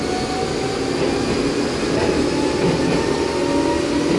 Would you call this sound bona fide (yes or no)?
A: yes